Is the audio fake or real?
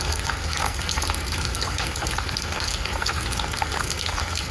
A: fake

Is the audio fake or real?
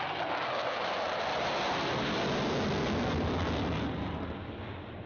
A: real